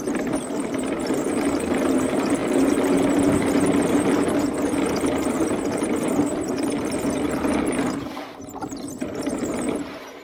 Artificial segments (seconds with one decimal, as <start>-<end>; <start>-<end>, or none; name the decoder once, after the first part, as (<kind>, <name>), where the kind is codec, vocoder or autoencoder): 0.0-10.2 (vocoder, BigVGAN v2)